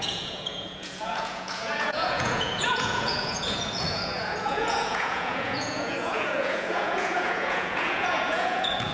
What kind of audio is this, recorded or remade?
remade